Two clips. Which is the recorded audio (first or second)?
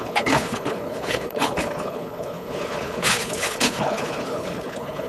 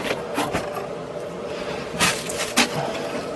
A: second